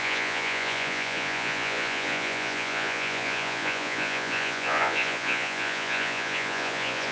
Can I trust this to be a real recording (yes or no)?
no